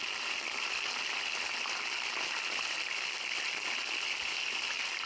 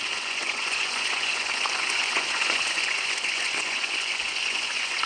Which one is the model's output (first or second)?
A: second